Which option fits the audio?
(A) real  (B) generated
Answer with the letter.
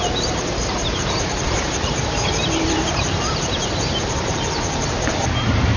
B